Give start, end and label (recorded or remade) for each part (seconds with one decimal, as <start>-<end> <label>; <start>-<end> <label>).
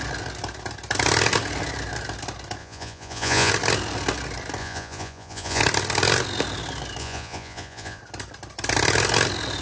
0.0-2.6 recorded; 2.6-3.5 remade; 3.5-4.6 recorded; 4.6-5.6 remade; 5.6-7.0 recorded; 7.0-8.0 remade; 8.0-9.6 recorded